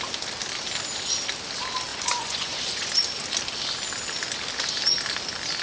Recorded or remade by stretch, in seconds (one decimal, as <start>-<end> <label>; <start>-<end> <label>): 0.0-1.9 recorded; 1.9-2.9 remade; 2.9-5.6 recorded